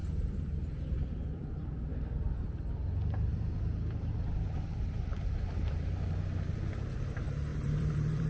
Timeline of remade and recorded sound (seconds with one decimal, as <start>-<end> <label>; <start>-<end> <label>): 0.0-1.5 remade; 1.5-3.3 recorded; 3.3-6.5 remade; 6.5-7.5 recorded; 7.5-8.3 remade